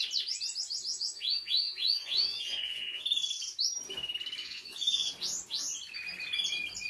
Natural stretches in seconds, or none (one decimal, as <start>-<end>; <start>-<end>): 0.0-0.9; 3.0-4.4; 5.1-6.9